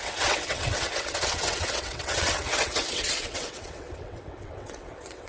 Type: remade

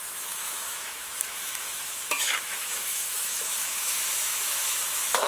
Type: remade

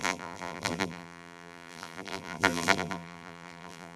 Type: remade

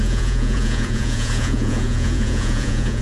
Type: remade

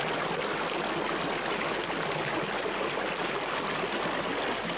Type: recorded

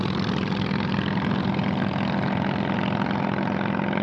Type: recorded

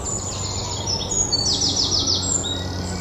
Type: recorded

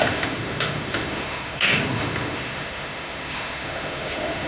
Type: remade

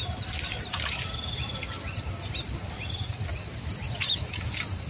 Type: remade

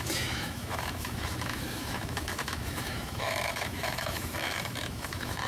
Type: remade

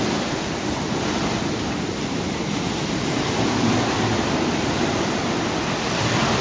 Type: remade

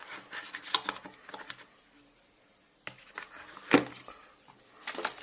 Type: recorded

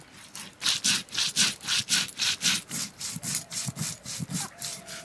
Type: recorded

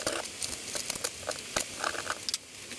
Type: recorded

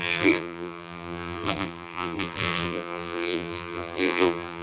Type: remade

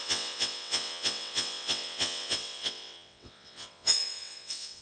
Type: remade